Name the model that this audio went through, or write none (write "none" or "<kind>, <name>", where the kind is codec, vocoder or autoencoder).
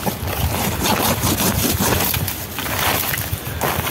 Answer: vocoder, BigVGAN v2